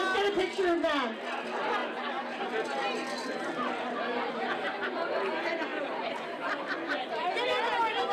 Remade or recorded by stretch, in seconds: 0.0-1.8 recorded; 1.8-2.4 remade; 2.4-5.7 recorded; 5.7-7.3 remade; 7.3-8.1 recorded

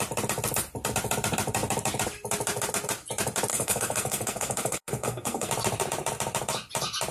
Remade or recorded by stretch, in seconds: 0.0-3.5 recorded; 3.5-5.5 remade; 5.5-7.1 recorded